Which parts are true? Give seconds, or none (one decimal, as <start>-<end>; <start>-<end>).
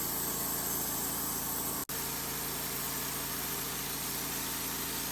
0.0-5.1